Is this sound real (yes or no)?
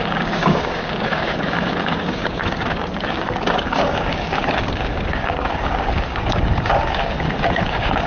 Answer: no